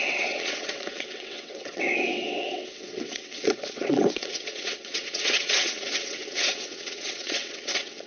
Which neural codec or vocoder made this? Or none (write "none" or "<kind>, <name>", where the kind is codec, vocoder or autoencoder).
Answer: vocoder, WaveNeXt